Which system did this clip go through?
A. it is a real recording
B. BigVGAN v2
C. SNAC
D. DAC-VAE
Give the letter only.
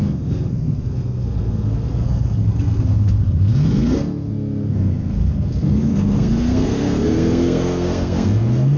C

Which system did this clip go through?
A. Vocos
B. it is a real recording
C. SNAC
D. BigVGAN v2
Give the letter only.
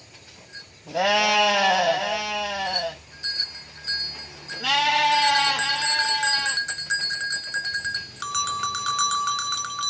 B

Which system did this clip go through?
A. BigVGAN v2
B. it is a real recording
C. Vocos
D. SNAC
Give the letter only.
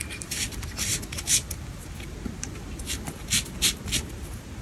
B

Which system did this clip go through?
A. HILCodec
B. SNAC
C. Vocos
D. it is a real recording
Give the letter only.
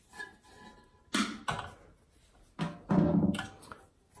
D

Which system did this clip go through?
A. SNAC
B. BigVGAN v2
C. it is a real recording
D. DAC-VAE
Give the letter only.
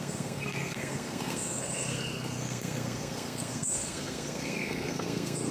A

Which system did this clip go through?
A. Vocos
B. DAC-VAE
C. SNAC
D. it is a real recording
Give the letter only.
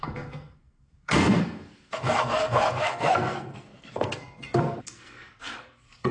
C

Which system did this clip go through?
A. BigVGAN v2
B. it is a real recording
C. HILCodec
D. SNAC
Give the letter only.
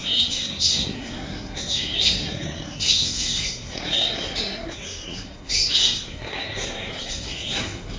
D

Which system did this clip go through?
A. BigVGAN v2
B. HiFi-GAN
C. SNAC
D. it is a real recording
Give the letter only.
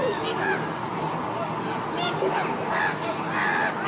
D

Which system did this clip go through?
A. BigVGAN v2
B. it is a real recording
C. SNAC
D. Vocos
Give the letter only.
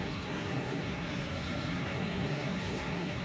C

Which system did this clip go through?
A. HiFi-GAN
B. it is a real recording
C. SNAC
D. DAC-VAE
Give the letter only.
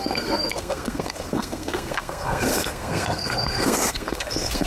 C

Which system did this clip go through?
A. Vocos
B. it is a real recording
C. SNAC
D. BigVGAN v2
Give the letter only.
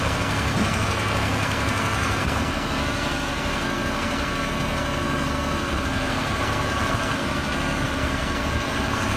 C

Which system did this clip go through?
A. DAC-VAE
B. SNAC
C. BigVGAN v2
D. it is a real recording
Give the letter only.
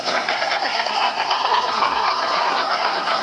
B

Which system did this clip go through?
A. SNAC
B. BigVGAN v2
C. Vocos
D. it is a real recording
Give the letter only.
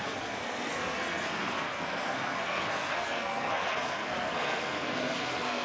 A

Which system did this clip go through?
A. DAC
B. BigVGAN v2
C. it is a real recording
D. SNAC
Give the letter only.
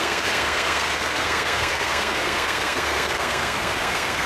D